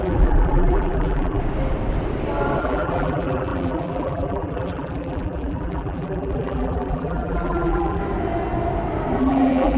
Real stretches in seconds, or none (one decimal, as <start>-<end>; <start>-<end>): 1.4-2.6; 8.0-9.2